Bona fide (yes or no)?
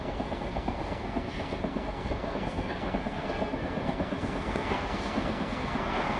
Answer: no